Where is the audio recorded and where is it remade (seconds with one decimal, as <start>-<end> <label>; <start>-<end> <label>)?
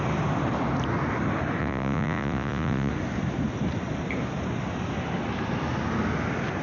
0.0-1.6 recorded; 1.6-2.9 remade; 2.9-6.6 recorded